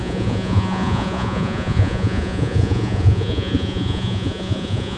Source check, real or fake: fake